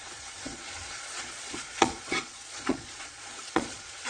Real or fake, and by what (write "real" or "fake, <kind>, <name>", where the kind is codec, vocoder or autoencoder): fake, vocoder, Vocos